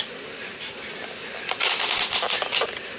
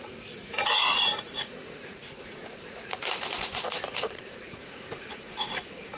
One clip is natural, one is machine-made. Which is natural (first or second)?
first